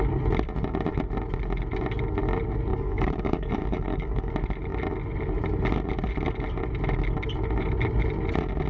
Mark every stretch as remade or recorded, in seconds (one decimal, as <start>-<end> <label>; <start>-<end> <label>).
0.0-2.7 recorded; 2.7-4.3 remade; 4.3-8.7 recorded